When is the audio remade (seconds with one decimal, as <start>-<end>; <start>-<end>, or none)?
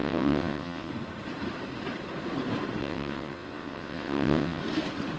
0.0-0.9; 2.8-4.6